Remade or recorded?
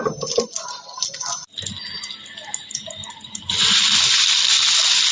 recorded